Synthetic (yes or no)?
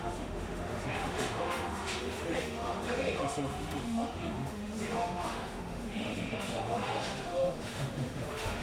yes